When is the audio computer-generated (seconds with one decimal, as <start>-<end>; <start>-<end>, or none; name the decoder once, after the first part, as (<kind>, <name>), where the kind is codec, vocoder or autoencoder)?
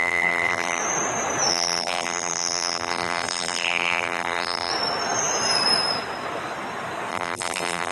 0.0-0.8 (vocoder, BigVGAN v2); 1.5-4.7; 7.1-7.9